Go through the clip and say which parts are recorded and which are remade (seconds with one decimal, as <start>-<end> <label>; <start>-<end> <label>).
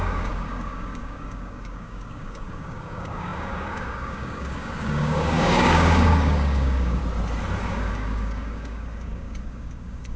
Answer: 0.0-7.0 remade; 7.0-7.6 recorded; 7.6-10.2 remade